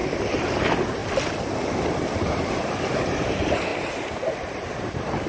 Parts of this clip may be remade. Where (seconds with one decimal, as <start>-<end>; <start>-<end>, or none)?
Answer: 0.6-1.0; 2.5-5.3